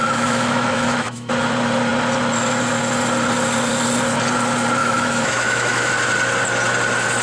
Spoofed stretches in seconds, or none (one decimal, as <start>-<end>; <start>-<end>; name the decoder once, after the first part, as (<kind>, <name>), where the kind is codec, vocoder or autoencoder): 0.0-1.3 (autoencoder, DAC-VAE); 4.8-5.9